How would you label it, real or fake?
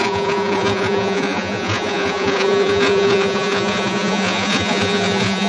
fake